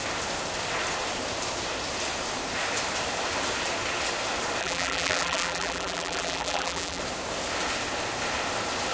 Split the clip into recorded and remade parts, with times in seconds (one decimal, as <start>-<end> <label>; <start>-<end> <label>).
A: 0.0-4.6 recorded; 4.6-7.0 remade; 7.0-8.9 recorded